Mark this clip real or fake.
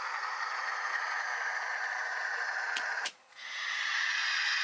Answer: fake